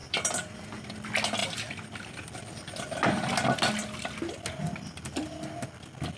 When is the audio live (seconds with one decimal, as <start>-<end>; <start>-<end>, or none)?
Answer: 0.9-1.4; 2.1-6.2